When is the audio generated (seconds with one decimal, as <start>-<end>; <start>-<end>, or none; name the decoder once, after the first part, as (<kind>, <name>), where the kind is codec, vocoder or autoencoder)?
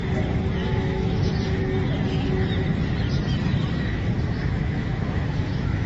0.6-1.3 (autoencoder, DAC-VAE); 3.7-5.9